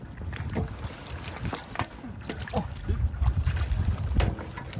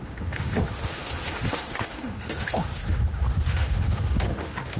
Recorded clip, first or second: first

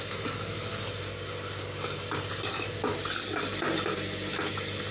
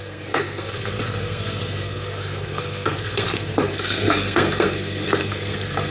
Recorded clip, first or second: first